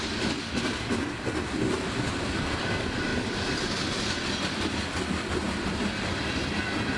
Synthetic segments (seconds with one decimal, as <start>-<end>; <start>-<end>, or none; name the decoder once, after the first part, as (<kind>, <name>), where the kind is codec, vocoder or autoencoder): 3.1-7.0 (vocoder, BigVGAN v2)